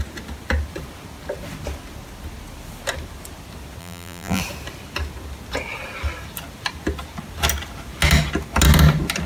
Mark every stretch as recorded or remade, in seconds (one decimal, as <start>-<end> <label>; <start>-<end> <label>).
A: 0.0-3.8 recorded; 3.8-4.4 remade; 4.4-9.3 recorded